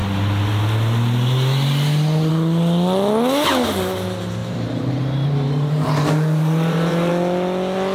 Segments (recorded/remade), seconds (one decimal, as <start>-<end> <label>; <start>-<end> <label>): 0.0-4.4 recorded; 4.4-7.1 remade; 7.1-7.9 recorded